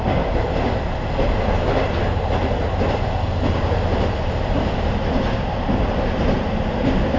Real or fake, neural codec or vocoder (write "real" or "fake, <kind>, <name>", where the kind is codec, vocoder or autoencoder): real